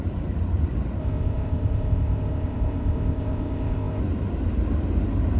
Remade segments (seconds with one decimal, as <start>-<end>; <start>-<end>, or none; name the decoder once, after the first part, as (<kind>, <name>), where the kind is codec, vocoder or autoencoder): 1.0-4.0 (codec, ZipCodec)